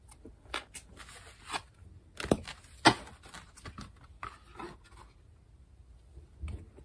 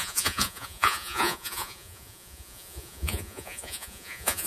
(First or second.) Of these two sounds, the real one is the first